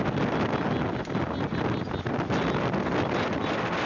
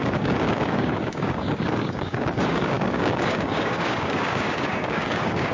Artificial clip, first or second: second